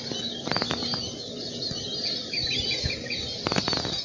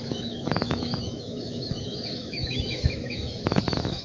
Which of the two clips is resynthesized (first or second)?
second